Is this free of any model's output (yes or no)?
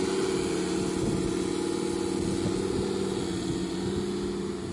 yes